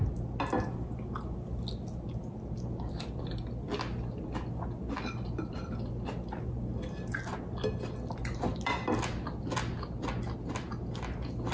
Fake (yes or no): no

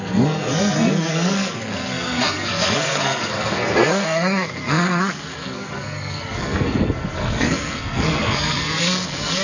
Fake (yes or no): yes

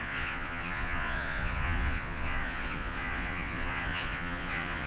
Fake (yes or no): yes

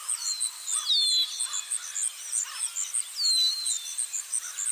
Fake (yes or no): no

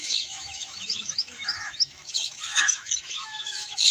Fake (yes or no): yes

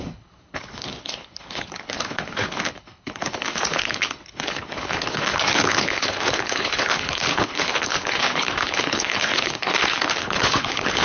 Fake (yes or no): yes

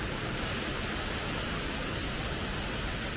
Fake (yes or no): no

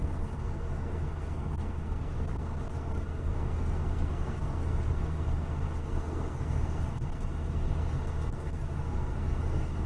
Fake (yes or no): yes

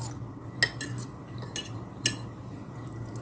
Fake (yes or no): no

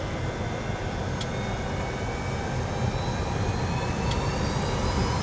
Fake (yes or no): no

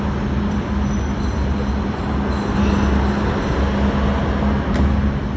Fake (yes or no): no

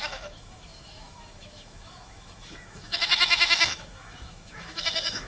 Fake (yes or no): yes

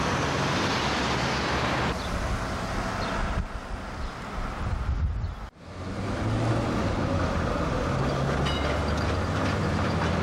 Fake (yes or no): no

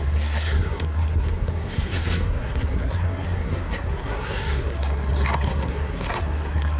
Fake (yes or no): yes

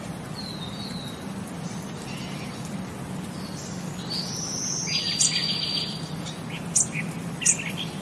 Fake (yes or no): no